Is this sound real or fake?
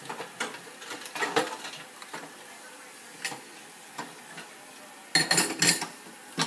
real